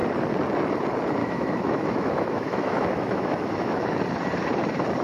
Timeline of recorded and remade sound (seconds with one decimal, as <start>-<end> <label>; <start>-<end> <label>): 0.0-1.2 recorded; 1.2-4.0 remade; 4.0-5.0 recorded